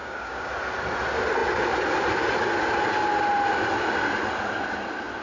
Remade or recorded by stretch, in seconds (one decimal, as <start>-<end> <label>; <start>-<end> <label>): 0.0-0.5 remade; 0.5-5.2 recorded